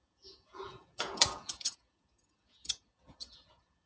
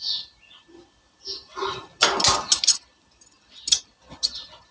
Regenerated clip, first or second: first